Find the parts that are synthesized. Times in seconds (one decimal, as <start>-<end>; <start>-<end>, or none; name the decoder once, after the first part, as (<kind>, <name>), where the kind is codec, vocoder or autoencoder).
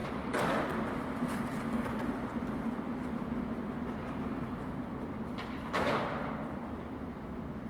0.0-7.7 (vocoder, BigVGAN v2)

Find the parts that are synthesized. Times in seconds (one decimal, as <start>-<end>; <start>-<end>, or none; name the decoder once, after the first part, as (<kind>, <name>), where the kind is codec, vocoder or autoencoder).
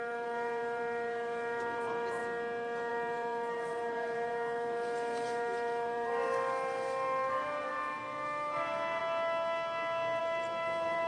0.0-2.2 (vocoder, BigVGAN v2); 2.9-9.0; 10.2-11.1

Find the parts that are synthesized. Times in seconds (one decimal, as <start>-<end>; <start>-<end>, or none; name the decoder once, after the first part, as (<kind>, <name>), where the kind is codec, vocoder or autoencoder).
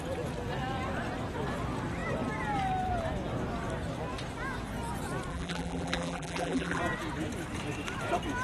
5.3-6.8 (vocoder, BigVGAN v2)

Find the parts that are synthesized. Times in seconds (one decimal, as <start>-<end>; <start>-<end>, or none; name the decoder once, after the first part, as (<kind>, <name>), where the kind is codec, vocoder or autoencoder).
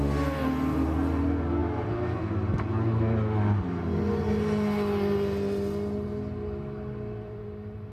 none